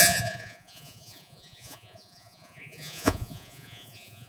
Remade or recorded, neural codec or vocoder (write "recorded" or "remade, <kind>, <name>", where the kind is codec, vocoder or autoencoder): remade, vocoder, Vocos